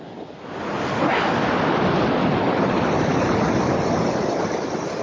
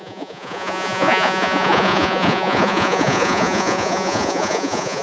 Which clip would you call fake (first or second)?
second